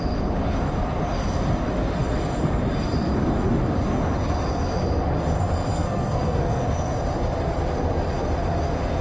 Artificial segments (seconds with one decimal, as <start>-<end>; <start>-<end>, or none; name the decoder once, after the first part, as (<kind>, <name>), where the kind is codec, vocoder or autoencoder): 5.7-6.6 (codec, SNAC)